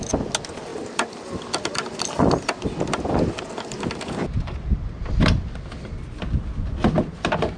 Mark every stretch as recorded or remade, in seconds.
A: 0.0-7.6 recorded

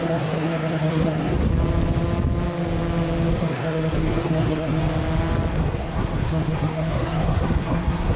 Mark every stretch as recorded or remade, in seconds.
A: 0.0-1.5 remade; 1.5-3.3 recorded; 3.3-4.8 remade; 4.8-5.5 recorded; 5.5-8.2 remade

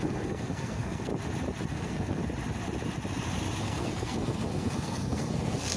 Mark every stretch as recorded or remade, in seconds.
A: 0.0-1.1 remade; 1.1-1.7 recorded; 1.7-2.2 remade; 2.2-3.6 recorded; 3.6-5.8 remade

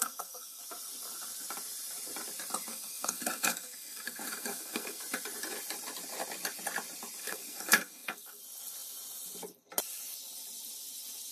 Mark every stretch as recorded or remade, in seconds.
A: 0.0-0.6 remade; 0.6-2.7 recorded; 2.7-5.0 remade; 5.0-7.2 recorded; 7.2-8.4 remade; 8.4-11.3 recorded